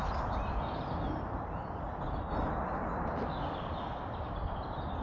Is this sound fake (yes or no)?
no